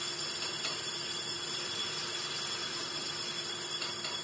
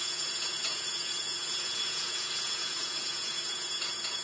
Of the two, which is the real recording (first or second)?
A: first